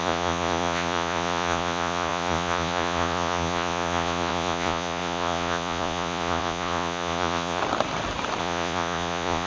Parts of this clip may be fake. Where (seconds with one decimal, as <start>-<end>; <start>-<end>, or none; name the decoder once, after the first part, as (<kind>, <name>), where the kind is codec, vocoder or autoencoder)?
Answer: 0.0-7.6 (vocoder, Vocos); 8.4-9.5